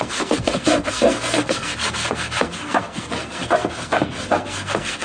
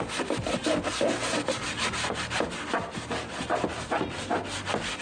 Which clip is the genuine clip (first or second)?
second